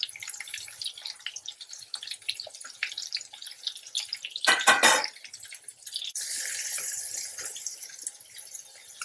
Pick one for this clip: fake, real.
fake